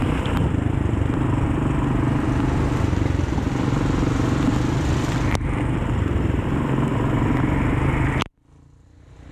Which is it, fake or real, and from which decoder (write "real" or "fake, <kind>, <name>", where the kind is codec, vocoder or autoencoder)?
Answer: fake, vocoder, BigVGAN v2